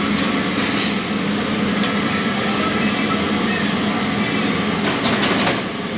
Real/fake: real